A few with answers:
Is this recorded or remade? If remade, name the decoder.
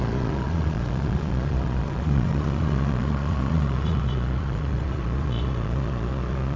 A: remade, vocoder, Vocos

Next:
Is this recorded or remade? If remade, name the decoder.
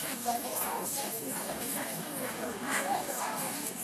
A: remade, codec, DAC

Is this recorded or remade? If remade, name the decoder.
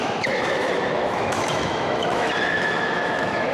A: remade, autoencoder, DAC-VAE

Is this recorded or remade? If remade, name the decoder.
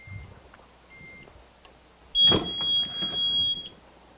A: recorded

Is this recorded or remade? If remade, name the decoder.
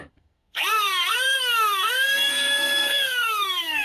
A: remade, codec, SNAC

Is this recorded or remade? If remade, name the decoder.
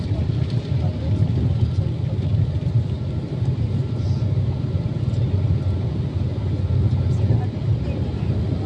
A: recorded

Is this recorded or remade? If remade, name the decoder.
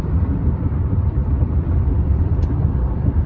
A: remade, vocoder, BigVGAN v2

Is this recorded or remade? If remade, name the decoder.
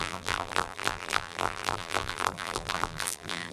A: remade, vocoder, BigVGAN v2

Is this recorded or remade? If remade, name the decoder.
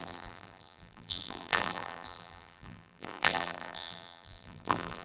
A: remade, vocoder, BigVGAN v2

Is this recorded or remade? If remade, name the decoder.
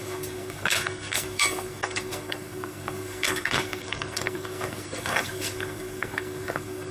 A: remade, codec, SNAC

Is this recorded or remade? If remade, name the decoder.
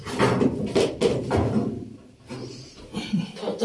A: recorded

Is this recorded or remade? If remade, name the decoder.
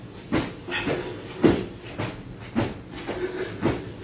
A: recorded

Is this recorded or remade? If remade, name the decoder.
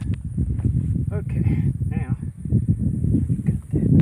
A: recorded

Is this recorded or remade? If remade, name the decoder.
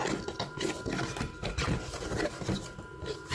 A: recorded